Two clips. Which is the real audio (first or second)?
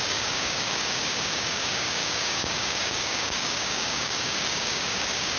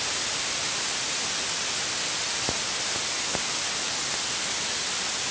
second